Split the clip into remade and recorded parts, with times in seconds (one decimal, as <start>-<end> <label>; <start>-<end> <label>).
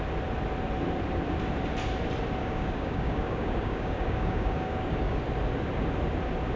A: 0.0-2.4 recorded; 2.4-5.2 remade; 5.2-6.6 recorded